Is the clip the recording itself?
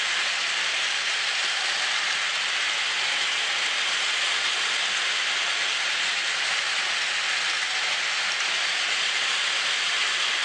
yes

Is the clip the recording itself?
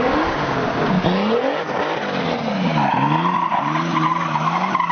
yes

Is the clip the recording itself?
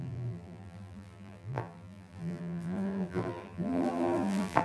no